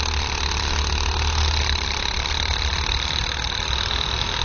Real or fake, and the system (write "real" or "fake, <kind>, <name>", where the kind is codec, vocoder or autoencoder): real